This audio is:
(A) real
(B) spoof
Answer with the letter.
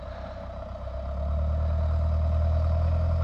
A